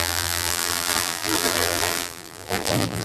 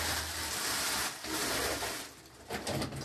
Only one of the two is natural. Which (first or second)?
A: second